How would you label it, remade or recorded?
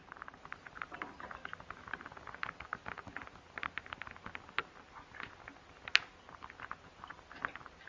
recorded